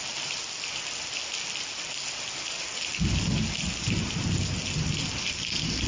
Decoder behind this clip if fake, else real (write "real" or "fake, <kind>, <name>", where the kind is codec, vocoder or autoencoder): real